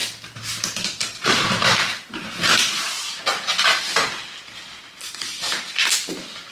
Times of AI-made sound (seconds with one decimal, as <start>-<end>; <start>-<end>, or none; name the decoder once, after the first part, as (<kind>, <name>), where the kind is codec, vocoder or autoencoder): 1.3-3.3 (vocoder, BigVGAN v2)